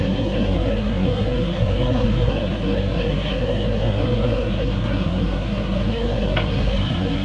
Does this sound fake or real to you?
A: fake